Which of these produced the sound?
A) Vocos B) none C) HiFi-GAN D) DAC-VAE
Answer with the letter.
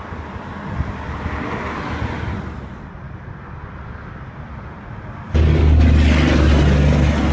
B